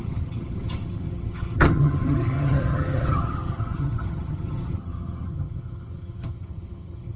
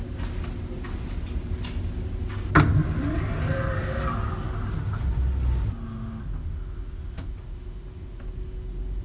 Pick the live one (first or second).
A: second